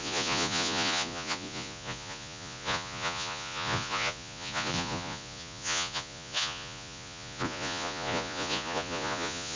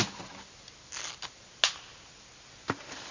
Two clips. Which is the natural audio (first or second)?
second